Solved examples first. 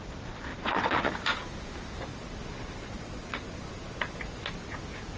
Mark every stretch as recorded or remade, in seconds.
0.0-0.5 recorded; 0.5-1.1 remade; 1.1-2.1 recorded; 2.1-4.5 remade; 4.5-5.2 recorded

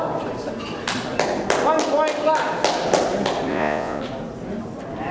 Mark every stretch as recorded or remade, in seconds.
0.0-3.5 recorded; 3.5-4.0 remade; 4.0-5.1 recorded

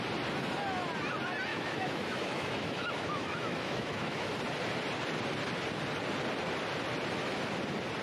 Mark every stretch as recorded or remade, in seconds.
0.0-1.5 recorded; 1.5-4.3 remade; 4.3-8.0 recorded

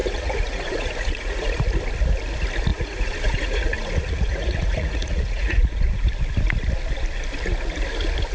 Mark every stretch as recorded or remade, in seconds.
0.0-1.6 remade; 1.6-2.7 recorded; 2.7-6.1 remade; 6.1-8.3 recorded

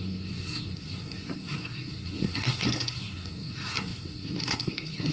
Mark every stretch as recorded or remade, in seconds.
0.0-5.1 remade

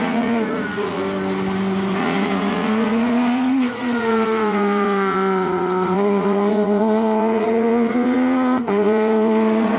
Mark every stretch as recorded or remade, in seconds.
0.0-1.0 remade; 1.0-2.0 recorded; 2.0-9.8 remade

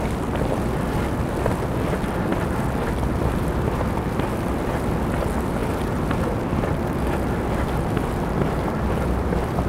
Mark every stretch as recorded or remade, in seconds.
0.0-9.7 recorded